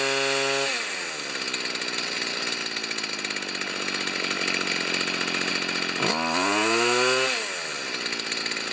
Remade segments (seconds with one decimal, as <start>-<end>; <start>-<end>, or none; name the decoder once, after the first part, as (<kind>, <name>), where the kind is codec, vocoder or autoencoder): none